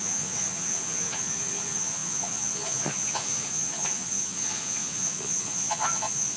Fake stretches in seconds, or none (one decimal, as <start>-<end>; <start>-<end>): 0.0-6.4